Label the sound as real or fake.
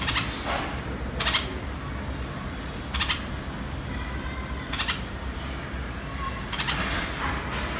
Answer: real